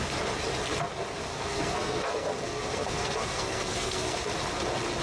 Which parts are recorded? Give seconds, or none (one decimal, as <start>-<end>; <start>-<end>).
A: 0.0-1.3; 4.3-5.0